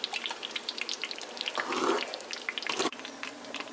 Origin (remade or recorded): recorded